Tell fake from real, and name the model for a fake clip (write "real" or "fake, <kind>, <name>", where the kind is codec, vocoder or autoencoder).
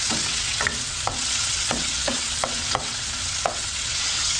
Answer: fake, vocoder, WaveNeXt